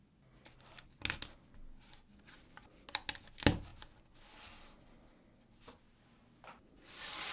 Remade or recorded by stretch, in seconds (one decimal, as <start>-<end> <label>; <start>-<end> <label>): 0.0-7.3 recorded